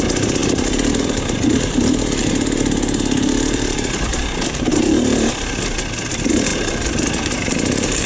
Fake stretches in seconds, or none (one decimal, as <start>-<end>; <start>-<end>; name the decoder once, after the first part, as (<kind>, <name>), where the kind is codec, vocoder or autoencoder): 0.4-5.3 (vocoder, BigVGAN v2); 6.5-8.1